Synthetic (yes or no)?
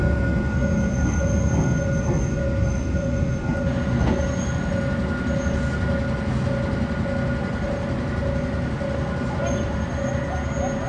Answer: no